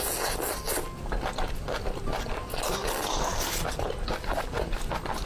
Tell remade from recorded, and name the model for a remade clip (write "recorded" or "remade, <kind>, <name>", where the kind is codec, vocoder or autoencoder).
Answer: recorded